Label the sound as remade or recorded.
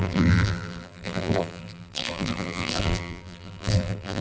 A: remade